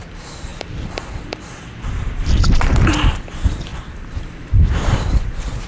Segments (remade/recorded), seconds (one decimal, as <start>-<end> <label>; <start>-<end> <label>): 0.0-0.5 recorded; 0.5-2.4 remade; 2.4-3.7 recorded; 3.7-5.2 remade; 5.2-5.7 recorded